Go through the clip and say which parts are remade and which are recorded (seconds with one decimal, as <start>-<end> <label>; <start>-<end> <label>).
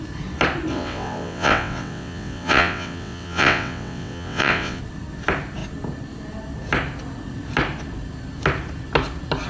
0.0-0.7 recorded; 0.7-4.8 remade; 4.8-9.5 recorded